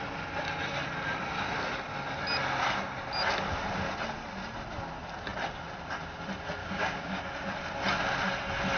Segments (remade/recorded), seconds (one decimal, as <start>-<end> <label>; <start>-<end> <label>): 0.0-6.6 recorded; 6.6-7.2 remade; 7.2-8.8 recorded